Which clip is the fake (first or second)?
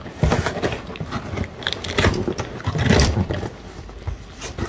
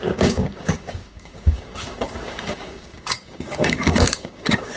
second